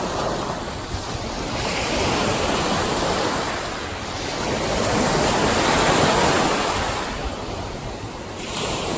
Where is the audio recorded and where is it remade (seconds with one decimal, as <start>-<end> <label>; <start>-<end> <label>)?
0.0-2.3 recorded; 2.3-3.0 remade; 3.0-9.0 recorded